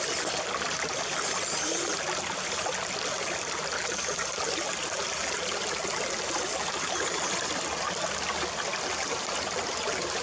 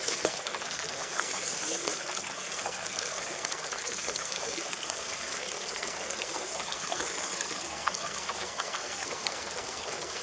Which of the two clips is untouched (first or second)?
first